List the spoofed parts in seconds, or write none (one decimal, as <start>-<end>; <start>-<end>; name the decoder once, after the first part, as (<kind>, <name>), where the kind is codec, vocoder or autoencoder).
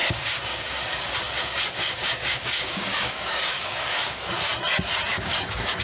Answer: 0.0-4.5 (codec, DAC); 5.1-5.8